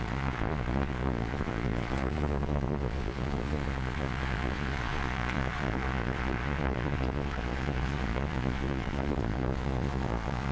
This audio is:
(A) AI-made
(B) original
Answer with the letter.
A